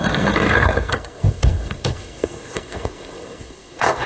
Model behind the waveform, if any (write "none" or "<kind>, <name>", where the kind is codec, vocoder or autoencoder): codec, SNAC